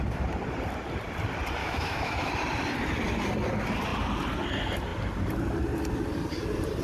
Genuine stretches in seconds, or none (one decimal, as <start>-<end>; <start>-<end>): 0.0-1.6; 2.3-6.8